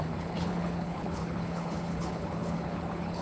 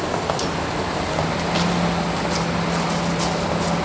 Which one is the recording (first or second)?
second